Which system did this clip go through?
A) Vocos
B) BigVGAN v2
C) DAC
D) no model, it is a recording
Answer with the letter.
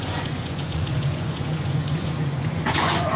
A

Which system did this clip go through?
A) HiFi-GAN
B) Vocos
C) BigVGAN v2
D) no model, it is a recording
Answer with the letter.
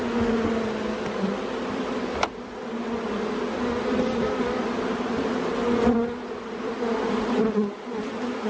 D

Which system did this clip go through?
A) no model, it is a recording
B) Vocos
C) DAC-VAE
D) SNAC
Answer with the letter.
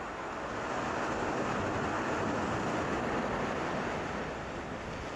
A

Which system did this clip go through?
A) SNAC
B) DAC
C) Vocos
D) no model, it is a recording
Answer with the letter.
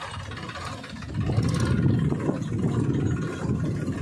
D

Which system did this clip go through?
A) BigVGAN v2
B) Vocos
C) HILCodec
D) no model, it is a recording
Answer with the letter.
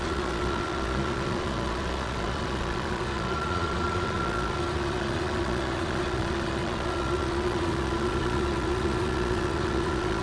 B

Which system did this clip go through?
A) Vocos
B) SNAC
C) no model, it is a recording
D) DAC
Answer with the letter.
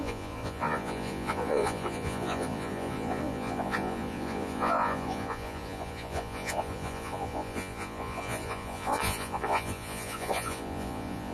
A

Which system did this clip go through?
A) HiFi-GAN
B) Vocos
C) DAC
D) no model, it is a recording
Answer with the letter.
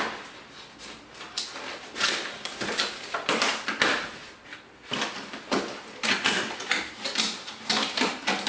D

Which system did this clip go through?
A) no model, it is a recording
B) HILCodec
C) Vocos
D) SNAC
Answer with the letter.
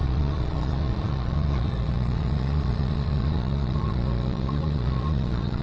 C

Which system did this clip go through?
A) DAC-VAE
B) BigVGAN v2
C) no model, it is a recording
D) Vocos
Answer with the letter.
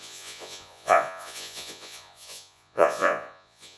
D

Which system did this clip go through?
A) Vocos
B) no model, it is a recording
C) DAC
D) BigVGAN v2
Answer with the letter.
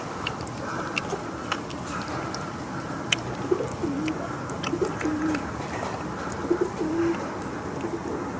B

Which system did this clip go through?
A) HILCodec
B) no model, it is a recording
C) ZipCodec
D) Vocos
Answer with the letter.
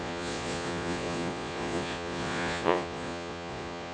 D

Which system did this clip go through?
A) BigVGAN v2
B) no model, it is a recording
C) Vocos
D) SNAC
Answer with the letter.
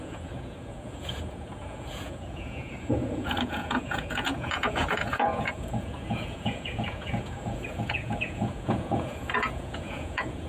C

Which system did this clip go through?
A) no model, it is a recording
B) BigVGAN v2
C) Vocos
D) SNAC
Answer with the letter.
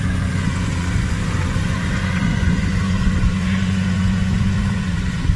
C